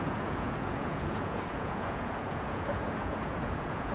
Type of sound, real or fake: fake